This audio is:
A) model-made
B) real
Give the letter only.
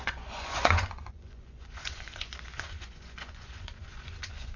A